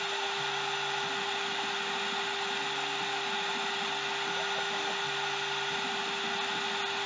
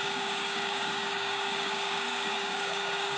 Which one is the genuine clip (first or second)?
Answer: first